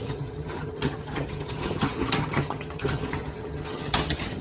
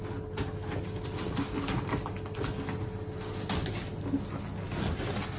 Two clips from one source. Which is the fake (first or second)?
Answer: first